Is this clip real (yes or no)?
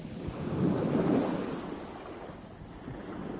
yes